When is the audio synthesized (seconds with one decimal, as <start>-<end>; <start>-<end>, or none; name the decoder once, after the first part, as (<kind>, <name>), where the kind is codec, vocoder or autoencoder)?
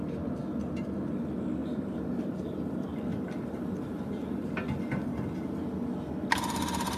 1.6-2.3 (vocoder, BigVGAN v2); 3.1-4.1